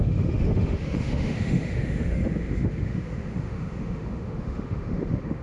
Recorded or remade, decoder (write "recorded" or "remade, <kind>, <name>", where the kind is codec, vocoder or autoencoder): remade, autoencoder, DAC-VAE